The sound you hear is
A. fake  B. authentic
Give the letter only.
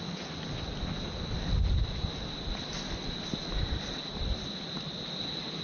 B